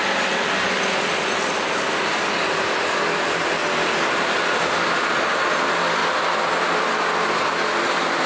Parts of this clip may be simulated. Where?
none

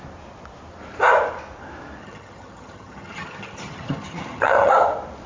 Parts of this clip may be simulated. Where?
2.0-4.7

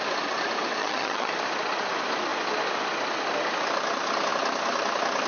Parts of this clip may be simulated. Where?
0.8-1.3

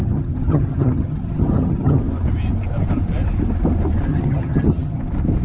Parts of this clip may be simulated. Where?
0.0-2.0; 4.1-5.0

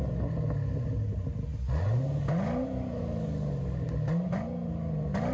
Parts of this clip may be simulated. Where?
none

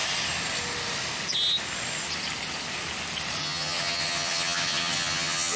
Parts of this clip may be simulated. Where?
3.4-5.6

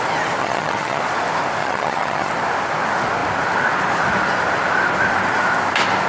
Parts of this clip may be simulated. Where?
0.4-1.0; 1.6-2.3

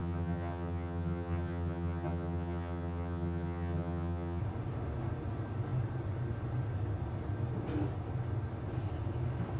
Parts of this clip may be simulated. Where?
0.0-4.4